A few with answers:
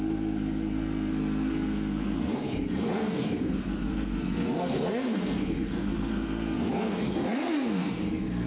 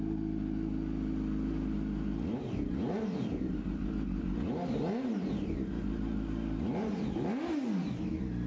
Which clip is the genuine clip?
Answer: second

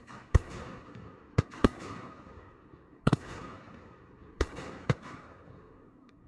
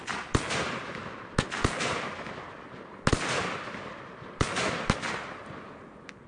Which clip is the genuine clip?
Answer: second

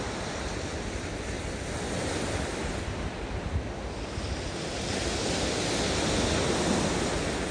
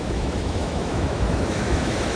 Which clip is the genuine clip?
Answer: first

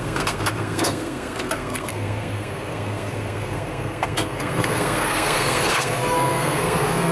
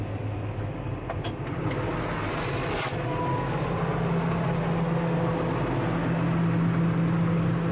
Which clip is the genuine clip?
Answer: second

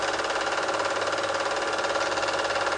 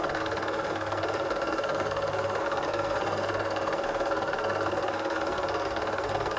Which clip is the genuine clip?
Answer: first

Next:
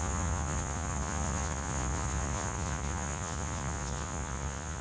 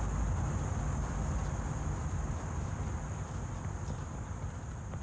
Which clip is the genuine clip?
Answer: second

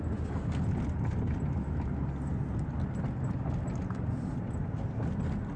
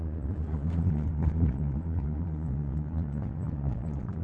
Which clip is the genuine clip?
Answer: first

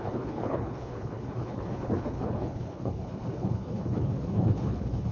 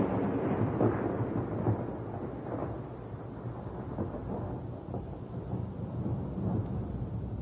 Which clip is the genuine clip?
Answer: second